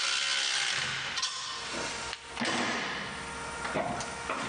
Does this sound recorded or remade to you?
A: recorded